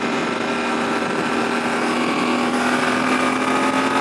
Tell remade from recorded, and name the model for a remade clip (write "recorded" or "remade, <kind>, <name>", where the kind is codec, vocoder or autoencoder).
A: recorded